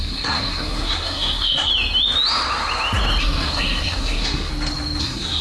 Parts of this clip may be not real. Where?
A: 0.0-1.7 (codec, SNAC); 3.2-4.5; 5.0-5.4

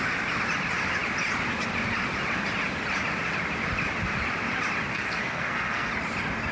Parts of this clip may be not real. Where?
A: 4.9-5.9 (codec, SNAC)

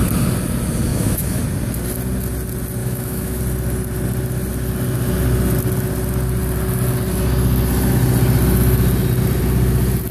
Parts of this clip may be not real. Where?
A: 0.9-1.4 (autoencoder, DAC-VAE); 2.8-3.4

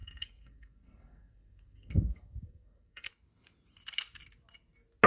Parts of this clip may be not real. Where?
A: 0.0-3.1 (codec, SNAC)

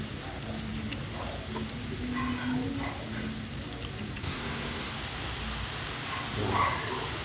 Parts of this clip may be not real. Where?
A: 4.2-4.9 (codec, SNAC)

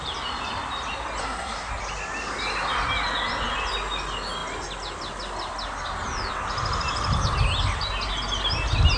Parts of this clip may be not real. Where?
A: 1.2-1.7 (codec, SNAC)

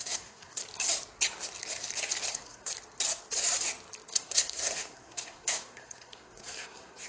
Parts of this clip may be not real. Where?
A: 0.0-0.6 (codec, SNAC); 2.3-2.7; 4.1-7.1

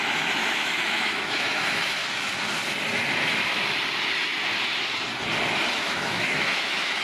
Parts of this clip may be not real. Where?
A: 0.0-2.0 (autoencoder, DAC-VAE); 5.7-7.0